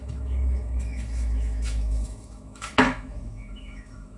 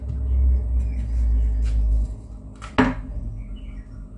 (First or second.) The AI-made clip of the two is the first